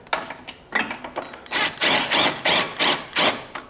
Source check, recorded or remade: recorded